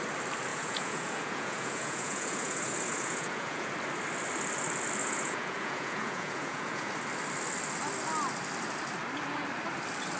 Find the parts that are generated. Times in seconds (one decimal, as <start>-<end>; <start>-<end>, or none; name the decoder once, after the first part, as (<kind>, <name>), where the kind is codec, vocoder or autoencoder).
0.5-3.7 (vocoder, Vocos); 5.0-6.9